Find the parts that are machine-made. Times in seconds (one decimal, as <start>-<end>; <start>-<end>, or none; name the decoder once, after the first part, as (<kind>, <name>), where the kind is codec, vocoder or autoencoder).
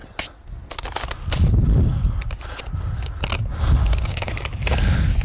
3.8-4.3 (codec, DAC)